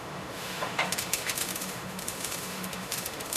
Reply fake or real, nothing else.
fake